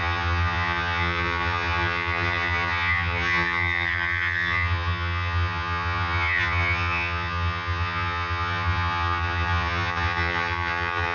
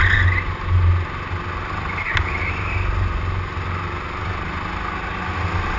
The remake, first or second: first